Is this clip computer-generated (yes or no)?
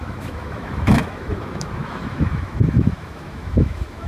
yes